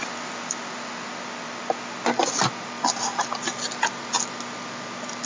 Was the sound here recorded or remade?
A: recorded